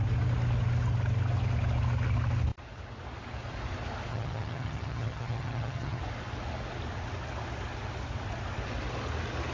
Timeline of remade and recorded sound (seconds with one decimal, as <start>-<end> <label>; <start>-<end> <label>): 0.0-4.1 recorded; 4.1-6.0 remade; 6.0-9.5 recorded